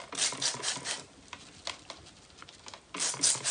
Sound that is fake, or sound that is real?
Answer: real